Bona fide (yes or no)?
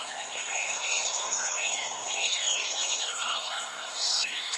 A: no